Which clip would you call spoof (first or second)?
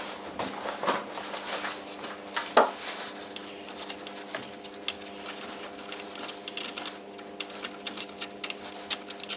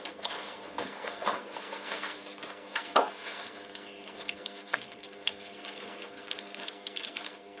second